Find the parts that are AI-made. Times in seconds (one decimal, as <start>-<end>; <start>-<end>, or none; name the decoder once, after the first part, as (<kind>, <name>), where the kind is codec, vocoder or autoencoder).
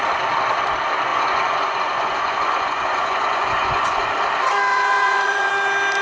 1.1-4.1 (vocoder, Vocos); 4.7-5.5